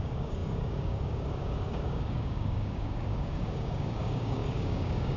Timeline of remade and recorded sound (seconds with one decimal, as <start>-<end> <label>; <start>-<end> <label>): 0.0-5.2 remade